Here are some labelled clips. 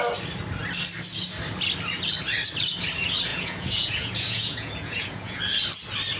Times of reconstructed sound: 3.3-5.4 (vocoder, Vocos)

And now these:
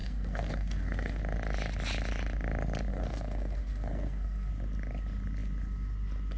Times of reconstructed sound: 0.0-1.2 (codec, SNAC); 2.9-4.5

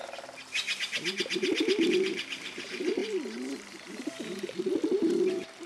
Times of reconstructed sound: 1.9-3.0 (vocoder, BigVGAN v2); 3.7-5.7

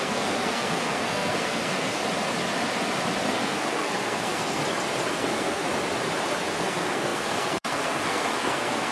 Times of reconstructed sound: 0.0-2.0 (codec, SNAC); 3.3-4.6; 5.1-5.6; 6.5-8.9

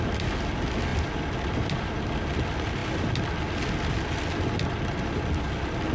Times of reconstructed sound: none